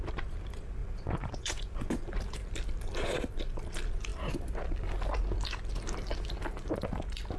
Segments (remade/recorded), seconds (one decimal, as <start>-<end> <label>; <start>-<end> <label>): 0.0-0.8 recorded; 0.8-2.1 remade; 2.1-7.4 recorded